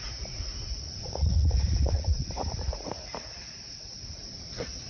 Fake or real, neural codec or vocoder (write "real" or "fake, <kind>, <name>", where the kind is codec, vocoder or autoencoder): fake, vocoder, Vocos